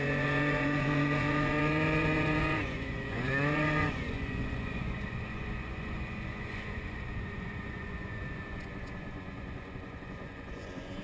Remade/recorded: remade